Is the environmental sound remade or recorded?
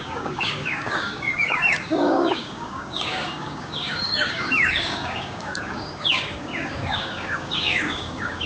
remade